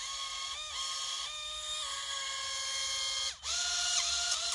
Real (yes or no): yes